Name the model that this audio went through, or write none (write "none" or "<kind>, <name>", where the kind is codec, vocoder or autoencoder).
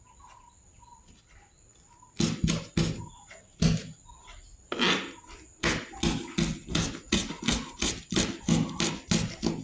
none